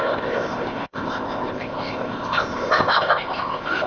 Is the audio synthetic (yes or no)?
yes